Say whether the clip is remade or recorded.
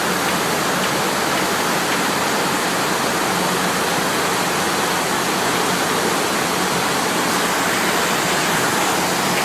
recorded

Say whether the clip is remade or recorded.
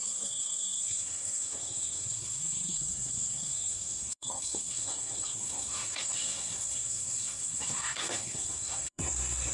remade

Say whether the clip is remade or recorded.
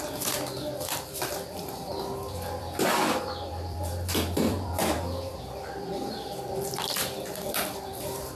remade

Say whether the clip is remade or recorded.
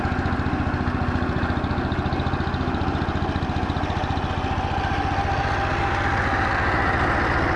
recorded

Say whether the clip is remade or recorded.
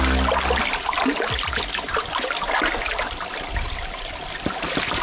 recorded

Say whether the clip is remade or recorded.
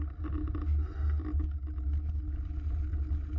recorded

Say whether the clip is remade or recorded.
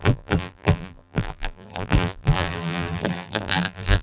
remade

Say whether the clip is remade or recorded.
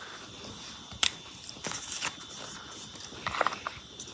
recorded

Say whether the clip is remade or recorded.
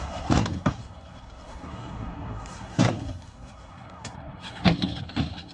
remade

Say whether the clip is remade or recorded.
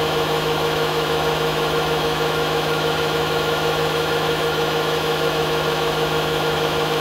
remade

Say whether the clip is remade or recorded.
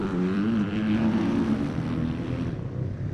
remade